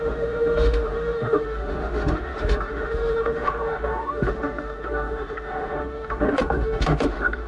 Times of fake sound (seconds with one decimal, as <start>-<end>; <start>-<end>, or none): 0.0-7.5